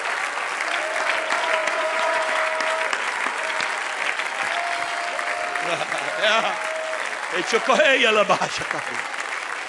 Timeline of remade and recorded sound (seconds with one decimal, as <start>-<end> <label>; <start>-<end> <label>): 0.0-1.6 recorded; 1.6-2.3 remade; 2.3-9.7 recorded